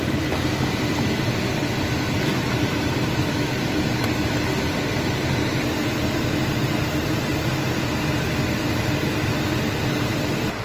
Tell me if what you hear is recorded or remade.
recorded